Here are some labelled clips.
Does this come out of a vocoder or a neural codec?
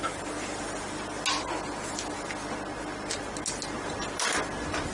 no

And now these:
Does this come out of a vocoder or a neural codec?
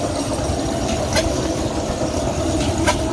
no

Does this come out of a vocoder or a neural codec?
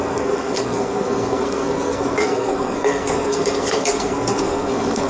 yes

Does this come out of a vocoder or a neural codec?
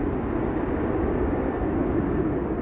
no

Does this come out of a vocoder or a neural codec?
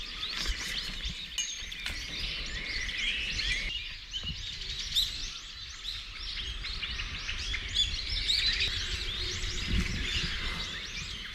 no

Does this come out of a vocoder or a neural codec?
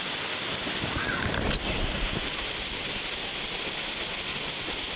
no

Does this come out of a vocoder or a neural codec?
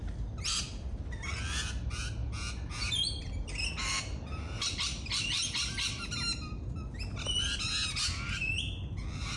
no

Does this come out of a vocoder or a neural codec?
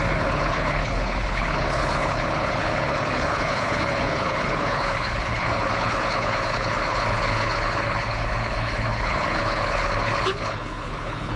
yes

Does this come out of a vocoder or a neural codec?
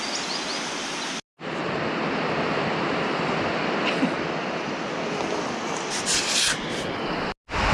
no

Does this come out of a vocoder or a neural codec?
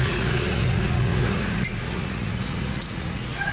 yes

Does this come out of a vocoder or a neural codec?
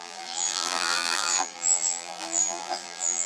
yes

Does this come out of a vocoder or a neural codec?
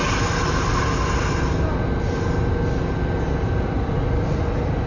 no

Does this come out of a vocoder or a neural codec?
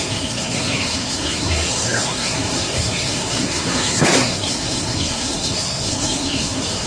yes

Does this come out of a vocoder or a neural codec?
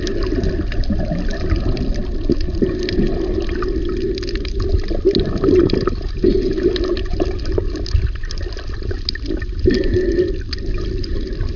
no